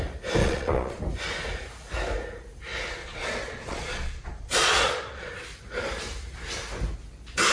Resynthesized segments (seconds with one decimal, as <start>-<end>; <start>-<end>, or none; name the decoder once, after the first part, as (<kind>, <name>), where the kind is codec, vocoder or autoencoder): 0.4-1.0 (vocoder, Vocos); 3.0-5.3

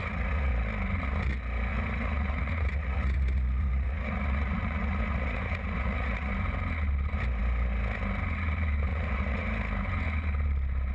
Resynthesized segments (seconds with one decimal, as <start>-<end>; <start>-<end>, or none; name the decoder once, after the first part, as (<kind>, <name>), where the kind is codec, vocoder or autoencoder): 0.0-0.5 (vocoder, Vocos); 1.7-6.3; 8.9-9.5

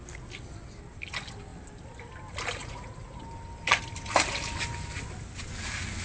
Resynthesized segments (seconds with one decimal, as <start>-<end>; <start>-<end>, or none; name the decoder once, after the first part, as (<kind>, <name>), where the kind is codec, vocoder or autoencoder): 2.6-3.2 (vocoder, Vocos)